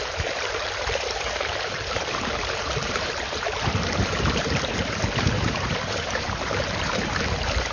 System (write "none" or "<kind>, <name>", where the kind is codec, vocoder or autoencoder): vocoder, BigVGAN v2